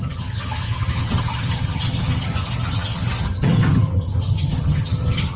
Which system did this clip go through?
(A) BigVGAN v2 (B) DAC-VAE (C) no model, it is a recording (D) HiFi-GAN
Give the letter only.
D